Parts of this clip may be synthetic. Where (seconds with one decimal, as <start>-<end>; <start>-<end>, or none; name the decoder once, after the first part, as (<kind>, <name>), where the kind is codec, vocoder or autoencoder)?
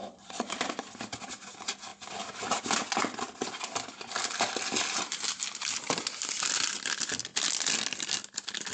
0.0-0.6 (vocoder, Vocos)